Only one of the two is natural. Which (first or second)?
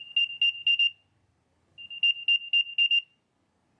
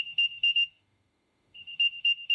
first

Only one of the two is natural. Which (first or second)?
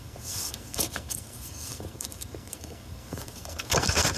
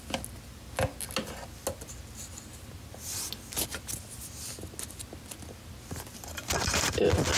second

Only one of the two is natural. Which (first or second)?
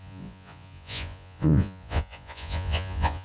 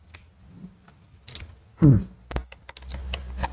second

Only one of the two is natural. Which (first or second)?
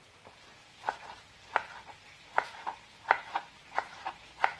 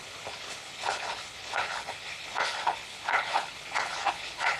first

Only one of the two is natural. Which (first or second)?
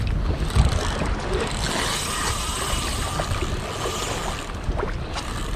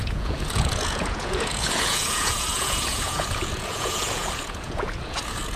first